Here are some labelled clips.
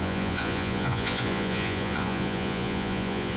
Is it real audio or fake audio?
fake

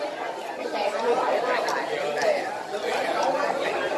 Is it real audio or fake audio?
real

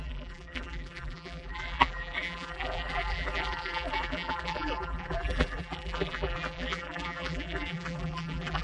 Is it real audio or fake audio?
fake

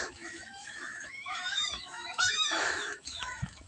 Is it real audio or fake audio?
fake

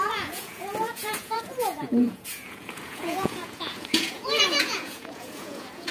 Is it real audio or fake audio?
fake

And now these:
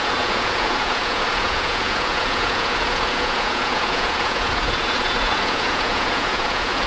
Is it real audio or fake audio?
fake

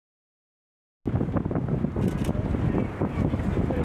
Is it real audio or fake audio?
real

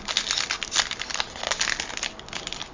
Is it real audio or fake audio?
real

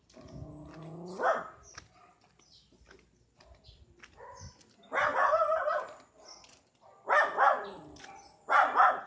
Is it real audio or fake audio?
real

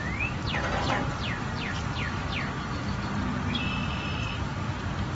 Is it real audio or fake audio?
fake